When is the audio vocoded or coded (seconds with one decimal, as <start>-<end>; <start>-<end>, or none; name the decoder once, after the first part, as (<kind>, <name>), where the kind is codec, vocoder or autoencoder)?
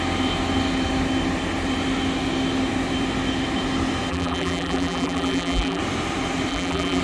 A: 4.1-5.8 (vocoder, BigVGAN v2); 6.5-7.0